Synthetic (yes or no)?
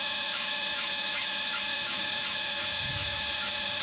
yes